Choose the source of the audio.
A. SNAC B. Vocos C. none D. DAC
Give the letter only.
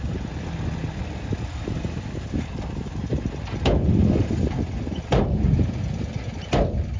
C